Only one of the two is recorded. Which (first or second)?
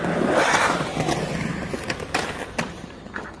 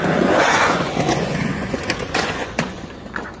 first